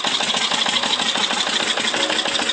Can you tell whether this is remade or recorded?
remade